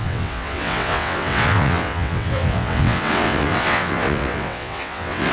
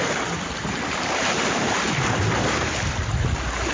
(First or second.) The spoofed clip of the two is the first